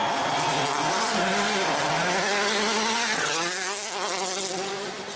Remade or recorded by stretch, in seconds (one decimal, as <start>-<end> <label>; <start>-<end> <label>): 0.0-5.2 recorded